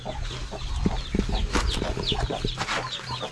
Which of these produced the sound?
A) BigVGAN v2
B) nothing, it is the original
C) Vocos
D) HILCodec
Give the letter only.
B